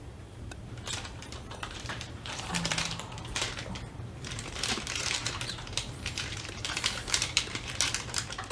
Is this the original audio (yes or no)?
no